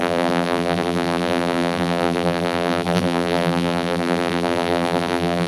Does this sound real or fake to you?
fake